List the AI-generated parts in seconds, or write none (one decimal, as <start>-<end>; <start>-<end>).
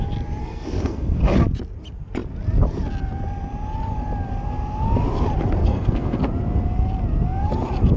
0.4-1.2; 5.6-6.2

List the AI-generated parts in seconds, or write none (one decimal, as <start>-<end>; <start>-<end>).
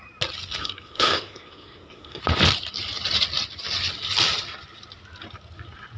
0.6-2.2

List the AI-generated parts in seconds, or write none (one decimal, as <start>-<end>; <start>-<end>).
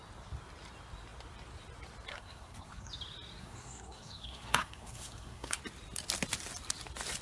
2.1-2.9; 3.4-5.6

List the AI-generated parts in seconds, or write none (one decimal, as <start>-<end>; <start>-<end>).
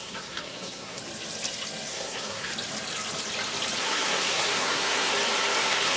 0.0-1.0; 1.9-2.5; 3.8-5.1; 5.6-6.0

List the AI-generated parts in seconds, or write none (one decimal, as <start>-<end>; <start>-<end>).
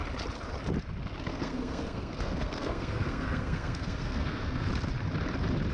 1.3-4.7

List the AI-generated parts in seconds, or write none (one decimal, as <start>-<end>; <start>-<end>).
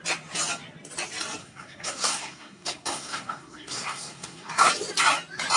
1.4-4.7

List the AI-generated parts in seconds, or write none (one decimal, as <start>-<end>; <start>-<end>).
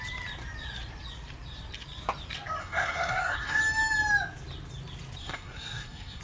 2.6-3.6; 5.2-6.2